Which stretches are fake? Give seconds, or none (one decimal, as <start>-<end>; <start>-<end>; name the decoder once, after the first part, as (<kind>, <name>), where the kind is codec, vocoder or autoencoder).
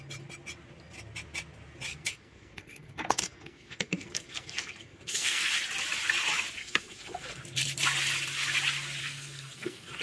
1.9-5.5 (codec, SNAC); 6.6-7.4; 9.0-10.0